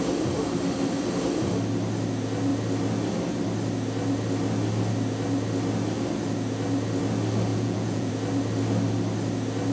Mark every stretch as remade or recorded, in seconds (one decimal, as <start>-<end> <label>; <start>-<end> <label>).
0.0-7.5 recorded; 7.5-8.1 remade; 8.1-9.7 recorded